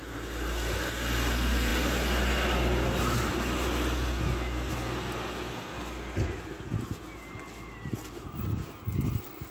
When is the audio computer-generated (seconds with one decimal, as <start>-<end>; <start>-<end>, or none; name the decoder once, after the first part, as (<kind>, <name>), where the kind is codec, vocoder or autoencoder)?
none